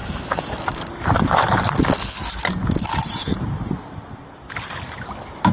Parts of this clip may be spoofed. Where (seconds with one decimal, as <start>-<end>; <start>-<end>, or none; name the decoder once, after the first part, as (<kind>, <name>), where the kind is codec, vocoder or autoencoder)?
0.0-1.7 (vocoder, BigVGAN v2); 3.3-4.5